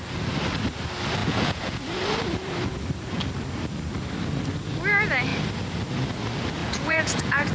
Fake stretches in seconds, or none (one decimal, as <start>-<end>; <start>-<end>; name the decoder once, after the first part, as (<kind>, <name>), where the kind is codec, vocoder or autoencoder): 1.2-1.8 (vocoder, Vocos); 6.6-7.5